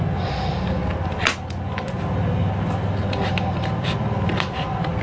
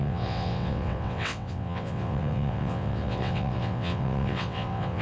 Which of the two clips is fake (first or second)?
second